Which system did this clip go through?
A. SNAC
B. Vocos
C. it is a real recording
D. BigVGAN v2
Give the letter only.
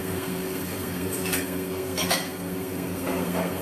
A